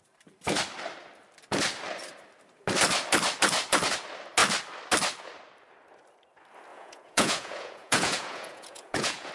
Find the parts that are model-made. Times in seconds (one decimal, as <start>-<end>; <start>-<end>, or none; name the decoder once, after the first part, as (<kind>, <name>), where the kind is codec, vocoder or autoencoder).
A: 6.7-9.3 (vocoder, Vocos)